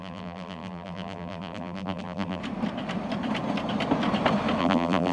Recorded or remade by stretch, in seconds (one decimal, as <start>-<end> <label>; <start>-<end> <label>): 0.0-2.4 remade; 2.4-4.6 recorded; 4.6-5.1 remade